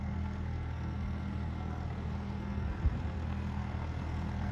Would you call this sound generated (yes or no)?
yes